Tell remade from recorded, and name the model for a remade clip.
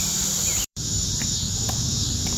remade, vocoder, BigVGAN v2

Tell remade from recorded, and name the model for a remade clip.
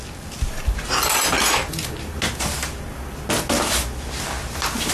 recorded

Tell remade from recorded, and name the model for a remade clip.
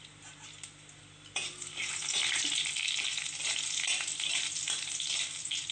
recorded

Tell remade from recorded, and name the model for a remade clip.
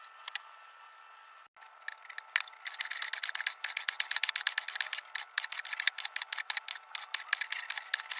recorded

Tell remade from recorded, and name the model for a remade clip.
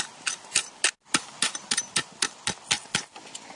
recorded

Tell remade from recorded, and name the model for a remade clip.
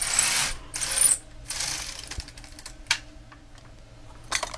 recorded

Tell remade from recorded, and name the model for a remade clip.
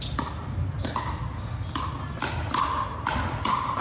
recorded